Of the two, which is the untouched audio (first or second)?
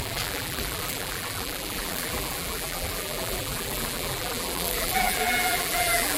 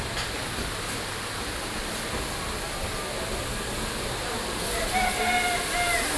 second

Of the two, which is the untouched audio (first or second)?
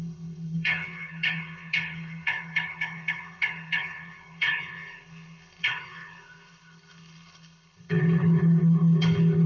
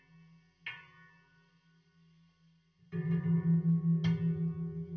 second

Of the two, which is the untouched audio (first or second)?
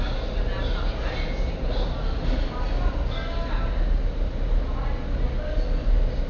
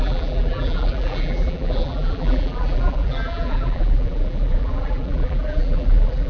first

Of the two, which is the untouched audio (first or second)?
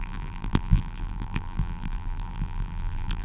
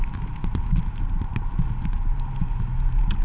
second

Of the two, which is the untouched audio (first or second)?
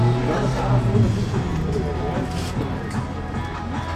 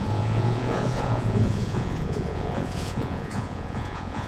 first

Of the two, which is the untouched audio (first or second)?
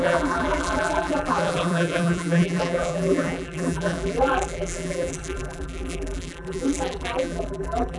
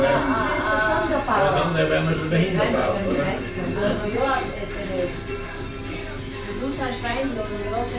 second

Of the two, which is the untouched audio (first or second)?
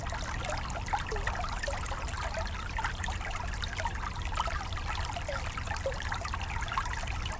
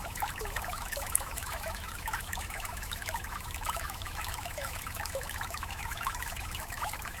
first